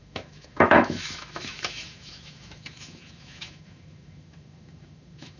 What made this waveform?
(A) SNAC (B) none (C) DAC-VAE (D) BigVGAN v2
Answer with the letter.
C